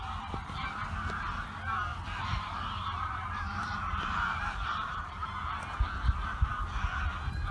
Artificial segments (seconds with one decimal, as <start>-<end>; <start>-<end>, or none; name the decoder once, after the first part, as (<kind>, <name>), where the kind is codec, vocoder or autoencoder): 1.9-5.3 (vocoder, BigVGAN v2)